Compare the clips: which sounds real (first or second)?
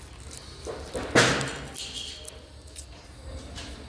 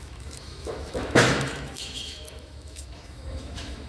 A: first